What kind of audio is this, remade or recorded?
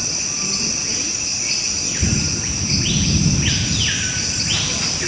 recorded